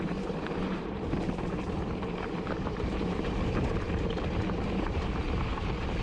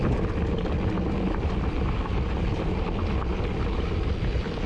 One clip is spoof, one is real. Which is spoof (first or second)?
first